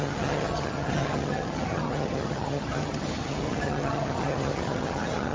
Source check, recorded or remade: remade